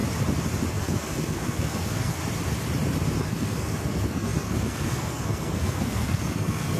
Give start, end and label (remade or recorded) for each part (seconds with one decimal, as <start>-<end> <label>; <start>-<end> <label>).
0.0-0.7 recorded; 0.7-2.2 remade; 2.2-3.2 recorded; 3.2-6.8 remade